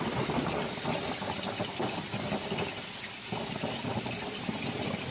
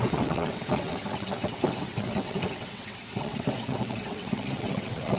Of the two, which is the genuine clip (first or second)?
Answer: first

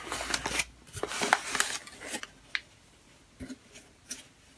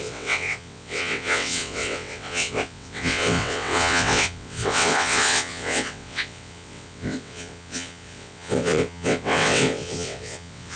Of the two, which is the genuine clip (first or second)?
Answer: first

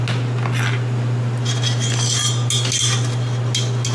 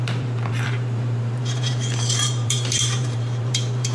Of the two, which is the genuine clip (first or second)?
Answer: first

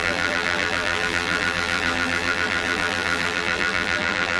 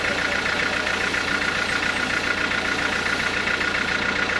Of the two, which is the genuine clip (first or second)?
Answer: second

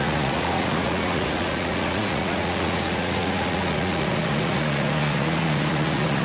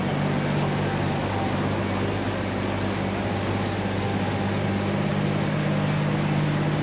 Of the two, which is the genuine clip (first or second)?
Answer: second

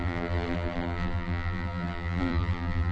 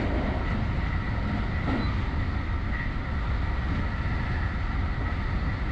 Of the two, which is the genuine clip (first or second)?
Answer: second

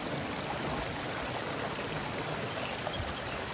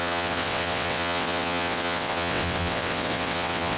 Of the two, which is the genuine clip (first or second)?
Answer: first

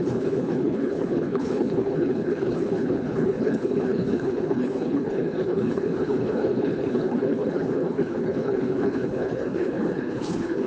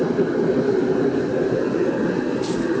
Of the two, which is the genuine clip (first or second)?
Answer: second